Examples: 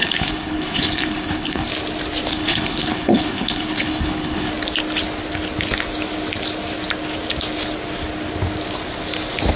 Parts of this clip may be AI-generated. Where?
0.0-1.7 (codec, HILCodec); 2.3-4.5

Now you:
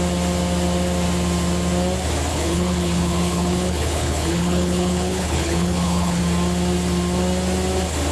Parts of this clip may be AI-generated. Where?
2.3-6.2 (codec, HILCodec)